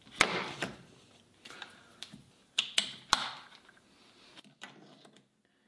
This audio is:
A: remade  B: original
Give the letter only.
B